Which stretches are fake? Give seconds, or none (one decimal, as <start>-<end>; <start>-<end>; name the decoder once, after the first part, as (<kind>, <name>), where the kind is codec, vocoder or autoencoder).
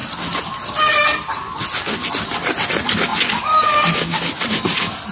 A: none